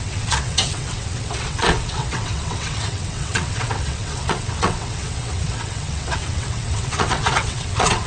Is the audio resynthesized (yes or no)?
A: yes